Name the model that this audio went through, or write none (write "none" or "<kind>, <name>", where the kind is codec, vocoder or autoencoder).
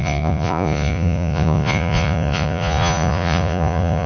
vocoder, Vocos